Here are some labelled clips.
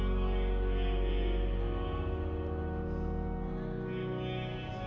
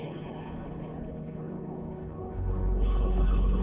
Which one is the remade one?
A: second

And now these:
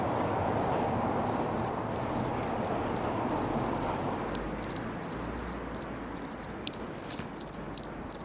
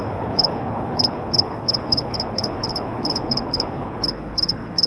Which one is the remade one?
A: second